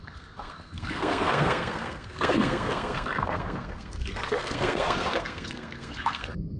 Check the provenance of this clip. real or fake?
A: fake